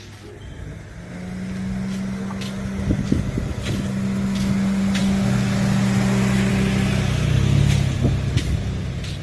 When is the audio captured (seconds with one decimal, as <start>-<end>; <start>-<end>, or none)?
0.0-9.2